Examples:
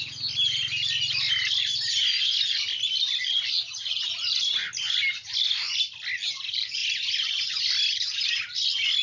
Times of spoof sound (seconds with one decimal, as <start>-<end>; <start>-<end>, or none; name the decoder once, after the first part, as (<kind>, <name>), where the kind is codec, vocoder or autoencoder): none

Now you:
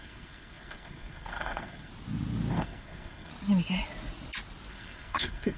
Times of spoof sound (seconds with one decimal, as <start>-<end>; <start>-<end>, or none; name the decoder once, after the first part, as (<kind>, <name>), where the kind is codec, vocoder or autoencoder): 0.0-1.9 (codec, SNAC); 2.5-3.3; 4.7-5.6

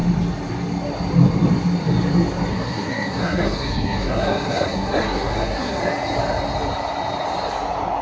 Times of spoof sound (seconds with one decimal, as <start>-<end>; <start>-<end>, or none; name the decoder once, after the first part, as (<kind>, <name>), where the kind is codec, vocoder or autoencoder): 2.5-5.8 (codec, SNAC)

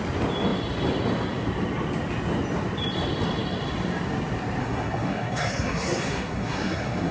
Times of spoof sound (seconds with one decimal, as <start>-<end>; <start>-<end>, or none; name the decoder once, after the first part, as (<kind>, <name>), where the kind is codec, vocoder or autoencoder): 4.6-7.1 (codec, SNAC)

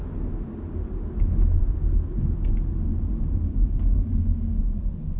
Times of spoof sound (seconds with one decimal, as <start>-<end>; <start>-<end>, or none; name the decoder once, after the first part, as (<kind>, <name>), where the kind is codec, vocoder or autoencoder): 3.5-4.6 (codec, SNAC)